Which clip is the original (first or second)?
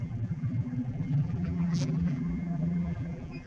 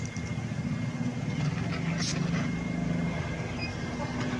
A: second